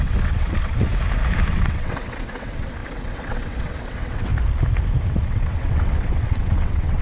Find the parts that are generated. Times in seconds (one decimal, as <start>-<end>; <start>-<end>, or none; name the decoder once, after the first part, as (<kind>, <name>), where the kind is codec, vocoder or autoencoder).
0.0-0.9 (vocoder, WaveNeXt); 1.5-4.3; 5.2-7.0